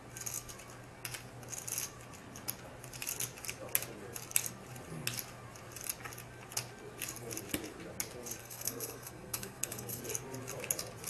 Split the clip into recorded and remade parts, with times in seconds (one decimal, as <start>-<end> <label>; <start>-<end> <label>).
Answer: 0.0-8.4 recorded; 8.4-10.0 remade; 10.0-11.1 recorded